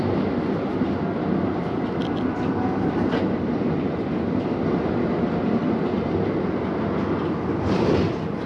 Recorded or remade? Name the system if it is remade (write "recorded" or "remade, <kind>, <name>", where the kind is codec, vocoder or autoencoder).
recorded